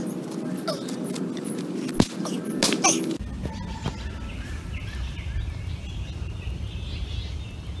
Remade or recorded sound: recorded